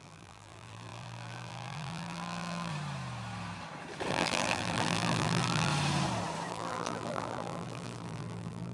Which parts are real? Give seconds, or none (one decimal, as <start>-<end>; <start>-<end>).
2.7-4.1; 5.7-6.5